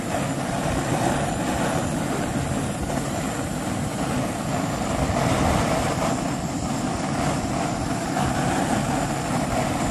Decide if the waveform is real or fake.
real